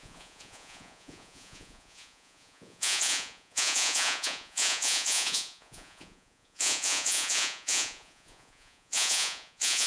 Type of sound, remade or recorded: remade